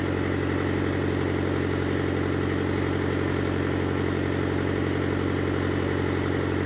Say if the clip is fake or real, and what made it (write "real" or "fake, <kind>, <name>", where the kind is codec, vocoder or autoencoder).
real